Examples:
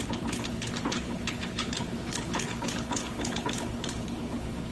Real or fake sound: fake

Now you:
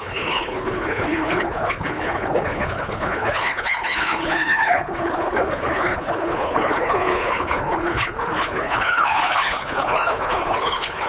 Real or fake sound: fake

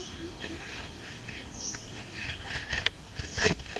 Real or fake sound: fake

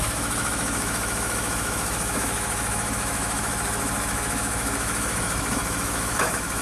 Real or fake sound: fake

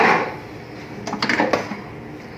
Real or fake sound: real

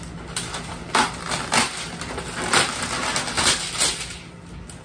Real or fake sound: real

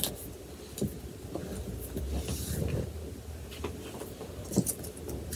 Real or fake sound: real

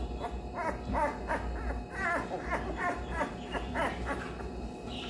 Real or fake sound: real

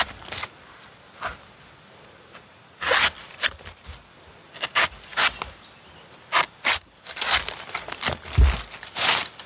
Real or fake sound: real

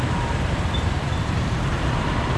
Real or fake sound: fake